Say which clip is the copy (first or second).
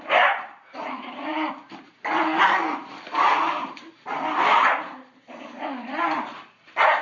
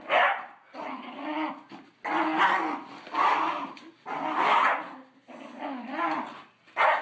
first